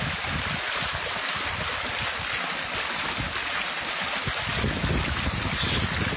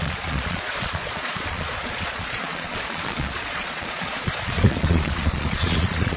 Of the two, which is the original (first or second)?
first